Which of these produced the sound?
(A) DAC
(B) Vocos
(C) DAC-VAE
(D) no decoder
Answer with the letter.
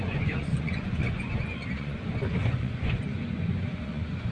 B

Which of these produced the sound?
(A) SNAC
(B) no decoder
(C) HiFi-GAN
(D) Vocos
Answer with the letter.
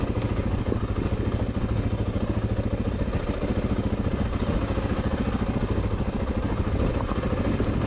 B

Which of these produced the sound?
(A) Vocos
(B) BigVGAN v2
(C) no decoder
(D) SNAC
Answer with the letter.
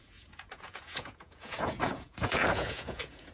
A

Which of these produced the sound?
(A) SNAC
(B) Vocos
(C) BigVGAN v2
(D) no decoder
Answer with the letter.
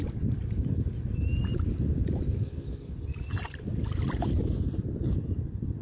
D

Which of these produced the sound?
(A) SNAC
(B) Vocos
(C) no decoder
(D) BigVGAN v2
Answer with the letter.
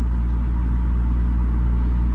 C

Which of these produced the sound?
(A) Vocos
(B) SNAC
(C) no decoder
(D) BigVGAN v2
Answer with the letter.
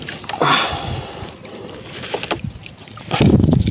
C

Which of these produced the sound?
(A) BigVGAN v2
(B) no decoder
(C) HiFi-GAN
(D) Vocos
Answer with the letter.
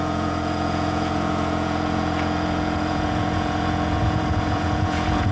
D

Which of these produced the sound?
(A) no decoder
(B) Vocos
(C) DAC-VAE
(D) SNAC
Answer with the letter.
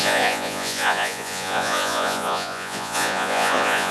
B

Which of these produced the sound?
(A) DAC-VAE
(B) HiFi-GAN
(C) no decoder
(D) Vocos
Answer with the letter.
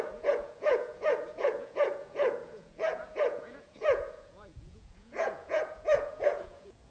D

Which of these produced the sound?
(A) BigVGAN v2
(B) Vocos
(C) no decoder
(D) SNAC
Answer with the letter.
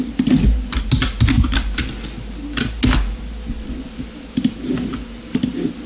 C